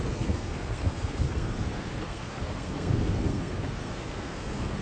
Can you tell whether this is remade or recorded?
remade